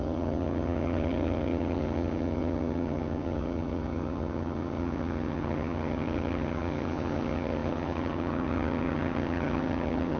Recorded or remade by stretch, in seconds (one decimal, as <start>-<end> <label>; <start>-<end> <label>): 0.0-10.2 remade